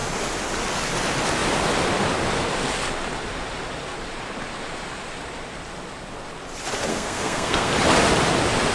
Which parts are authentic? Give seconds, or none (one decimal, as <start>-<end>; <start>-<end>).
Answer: 0.0-6.9; 7.7-8.7